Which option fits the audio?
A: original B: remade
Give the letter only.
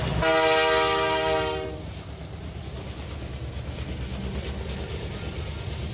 A